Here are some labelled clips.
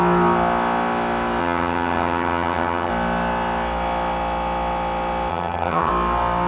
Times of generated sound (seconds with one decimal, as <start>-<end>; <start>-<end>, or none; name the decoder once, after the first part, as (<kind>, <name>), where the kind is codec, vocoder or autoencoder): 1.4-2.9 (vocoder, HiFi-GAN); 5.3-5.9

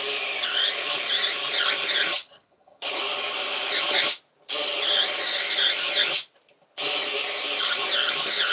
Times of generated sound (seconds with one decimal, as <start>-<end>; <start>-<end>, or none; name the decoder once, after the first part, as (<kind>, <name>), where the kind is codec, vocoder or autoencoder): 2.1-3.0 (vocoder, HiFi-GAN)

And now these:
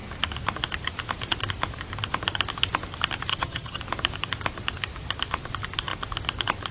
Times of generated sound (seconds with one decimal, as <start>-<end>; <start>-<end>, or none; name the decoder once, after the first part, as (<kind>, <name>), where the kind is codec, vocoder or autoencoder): 3.3-3.8 (vocoder, HiFi-GAN)